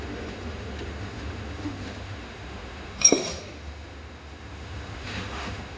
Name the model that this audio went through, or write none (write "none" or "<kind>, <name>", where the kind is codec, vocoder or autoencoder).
autoencoder, DAC-VAE